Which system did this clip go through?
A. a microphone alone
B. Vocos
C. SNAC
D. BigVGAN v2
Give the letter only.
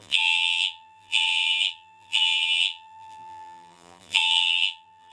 D